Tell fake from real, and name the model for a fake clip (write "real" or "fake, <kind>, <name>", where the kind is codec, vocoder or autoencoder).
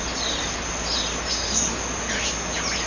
real